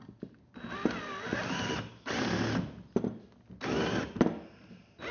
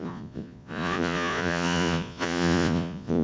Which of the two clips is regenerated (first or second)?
second